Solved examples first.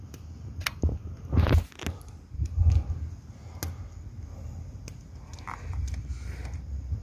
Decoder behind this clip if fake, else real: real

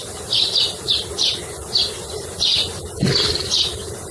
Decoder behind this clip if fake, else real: real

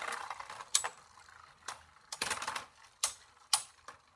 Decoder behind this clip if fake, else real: real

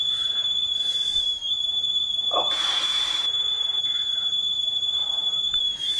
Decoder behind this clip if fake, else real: fake, vocoder, BigVGAN v2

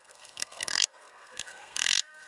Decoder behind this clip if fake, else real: fake, codec, SNAC